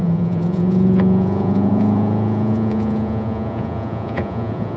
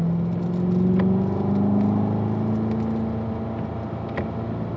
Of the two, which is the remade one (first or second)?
first